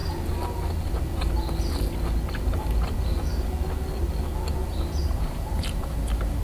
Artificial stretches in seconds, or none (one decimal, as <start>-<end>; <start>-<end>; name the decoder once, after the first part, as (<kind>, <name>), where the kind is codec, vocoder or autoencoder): 4.6-6.4 (vocoder, BigVGAN v2)